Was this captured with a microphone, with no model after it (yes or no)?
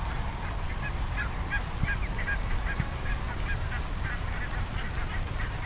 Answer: yes